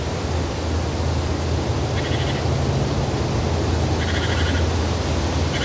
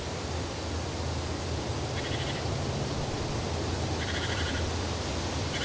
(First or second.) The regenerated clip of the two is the second